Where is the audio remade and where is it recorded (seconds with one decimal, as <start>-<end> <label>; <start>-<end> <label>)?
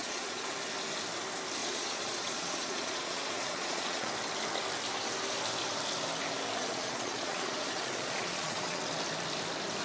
0.0-0.5 remade; 0.5-1.6 recorded; 1.6-4.1 remade; 4.1-6.6 recorded; 6.6-8.8 remade; 8.8-9.8 recorded